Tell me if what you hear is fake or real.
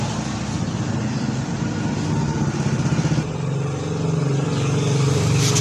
real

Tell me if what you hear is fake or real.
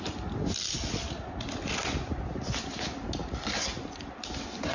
real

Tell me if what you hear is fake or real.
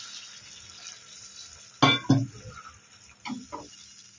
real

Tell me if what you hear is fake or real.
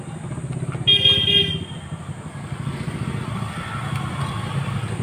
real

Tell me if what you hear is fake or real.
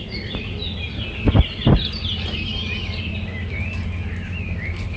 real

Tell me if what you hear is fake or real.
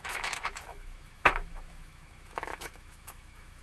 fake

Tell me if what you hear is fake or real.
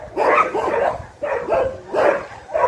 real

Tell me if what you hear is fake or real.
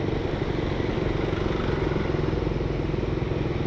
real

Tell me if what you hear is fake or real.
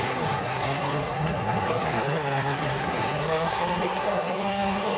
fake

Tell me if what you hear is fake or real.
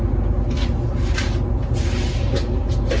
real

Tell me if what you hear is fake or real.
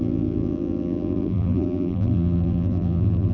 fake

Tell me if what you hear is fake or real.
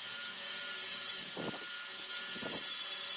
fake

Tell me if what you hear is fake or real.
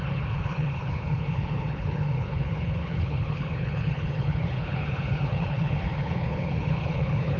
fake